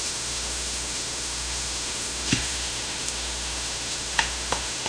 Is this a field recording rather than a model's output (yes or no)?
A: no